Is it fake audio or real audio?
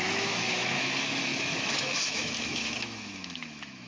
fake